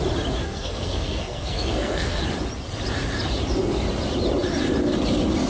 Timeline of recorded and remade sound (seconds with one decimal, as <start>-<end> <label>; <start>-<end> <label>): 0.0-0.4 recorded; 0.4-2.2 remade; 2.2-5.5 recorded